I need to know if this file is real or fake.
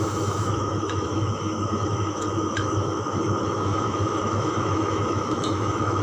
fake